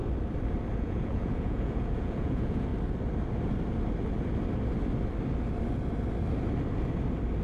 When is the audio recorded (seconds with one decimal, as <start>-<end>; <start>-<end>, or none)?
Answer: 0.0-0.8; 2.7-7.4